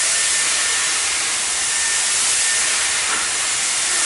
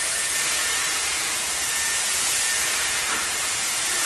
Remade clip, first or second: second